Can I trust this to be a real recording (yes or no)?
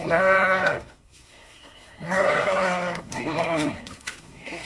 no